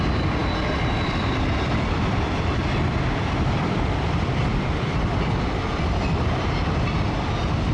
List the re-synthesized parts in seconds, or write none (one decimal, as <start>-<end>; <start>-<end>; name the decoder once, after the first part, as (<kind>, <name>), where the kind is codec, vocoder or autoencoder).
0.4-4.9 (vocoder, BigVGAN v2)